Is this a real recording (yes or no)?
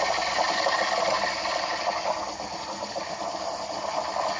yes